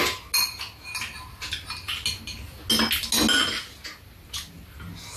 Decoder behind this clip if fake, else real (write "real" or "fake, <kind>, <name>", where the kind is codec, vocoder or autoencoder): real